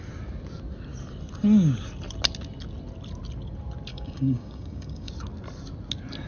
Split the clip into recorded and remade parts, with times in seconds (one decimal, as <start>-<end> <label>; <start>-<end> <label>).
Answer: 0.0-3.9 recorded; 3.9-5.1 remade; 5.1-6.3 recorded